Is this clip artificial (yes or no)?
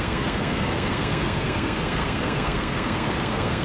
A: yes